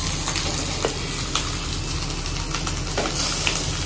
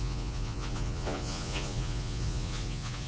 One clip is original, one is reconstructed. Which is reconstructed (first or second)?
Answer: second